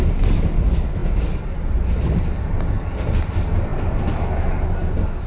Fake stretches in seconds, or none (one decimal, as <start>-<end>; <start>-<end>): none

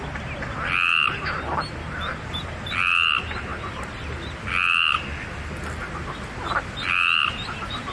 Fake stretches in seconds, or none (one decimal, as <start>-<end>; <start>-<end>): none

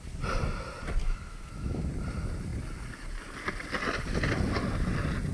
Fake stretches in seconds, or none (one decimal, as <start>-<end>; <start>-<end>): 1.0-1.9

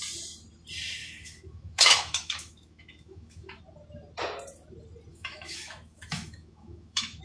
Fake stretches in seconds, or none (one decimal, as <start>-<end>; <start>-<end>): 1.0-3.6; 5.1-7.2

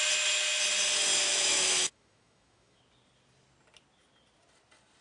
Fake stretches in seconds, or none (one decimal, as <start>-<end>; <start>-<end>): 1.2-2.8

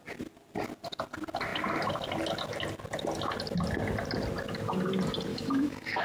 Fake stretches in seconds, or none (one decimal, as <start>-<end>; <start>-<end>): 5.3-6.0

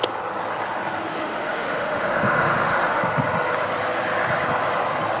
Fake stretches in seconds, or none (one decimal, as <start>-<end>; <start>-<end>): 1.2-3.0